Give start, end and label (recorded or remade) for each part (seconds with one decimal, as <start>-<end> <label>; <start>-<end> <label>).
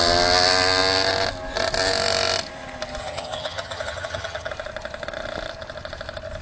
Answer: 0.0-3.0 recorded; 3.0-4.5 remade; 4.5-6.4 recorded